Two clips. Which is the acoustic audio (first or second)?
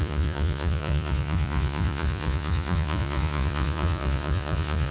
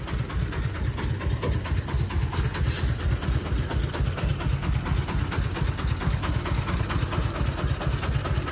second